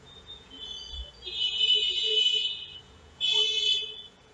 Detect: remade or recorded remade